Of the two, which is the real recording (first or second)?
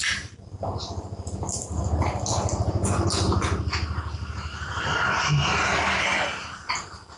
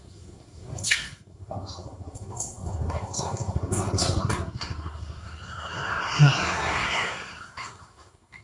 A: first